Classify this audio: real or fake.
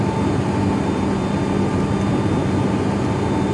real